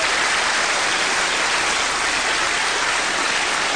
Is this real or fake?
real